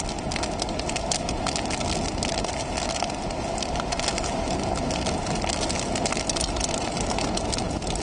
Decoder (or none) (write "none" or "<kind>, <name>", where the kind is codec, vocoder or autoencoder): none